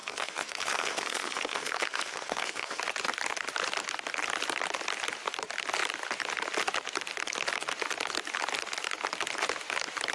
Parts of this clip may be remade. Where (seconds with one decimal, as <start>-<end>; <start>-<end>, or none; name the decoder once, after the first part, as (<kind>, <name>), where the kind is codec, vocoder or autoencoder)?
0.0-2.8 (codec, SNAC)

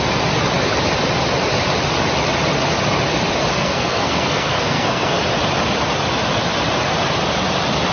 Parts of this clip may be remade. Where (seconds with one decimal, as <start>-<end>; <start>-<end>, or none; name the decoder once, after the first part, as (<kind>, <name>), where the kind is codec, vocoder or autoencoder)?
3.5-5.2 (codec, SNAC)

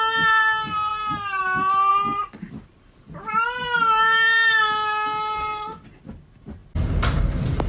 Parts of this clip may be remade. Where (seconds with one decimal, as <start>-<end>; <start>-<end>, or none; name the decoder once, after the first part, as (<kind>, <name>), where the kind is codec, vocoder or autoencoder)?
none